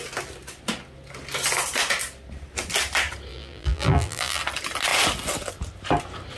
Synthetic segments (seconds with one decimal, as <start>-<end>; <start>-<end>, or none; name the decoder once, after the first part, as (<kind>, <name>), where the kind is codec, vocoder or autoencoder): 3.3-4.4 (vocoder, BigVGAN v2)